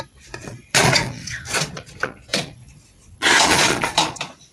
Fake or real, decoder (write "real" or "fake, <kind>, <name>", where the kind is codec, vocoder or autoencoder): fake, vocoder, Vocos